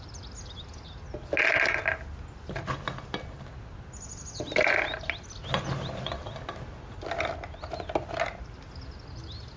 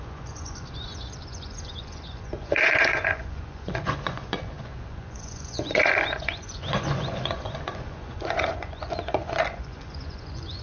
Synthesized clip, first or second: second